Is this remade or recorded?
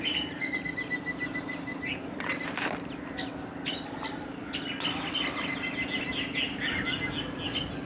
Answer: recorded